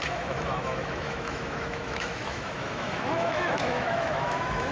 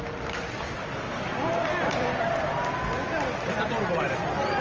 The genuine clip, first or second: second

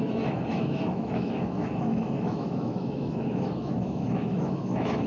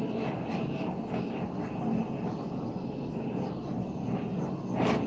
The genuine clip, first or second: second